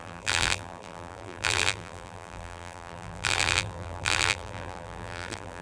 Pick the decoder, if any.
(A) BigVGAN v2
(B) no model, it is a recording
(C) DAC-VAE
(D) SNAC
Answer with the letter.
A